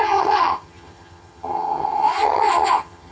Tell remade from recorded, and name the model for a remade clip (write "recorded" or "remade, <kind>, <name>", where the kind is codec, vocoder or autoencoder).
remade, vocoder, HiFi-GAN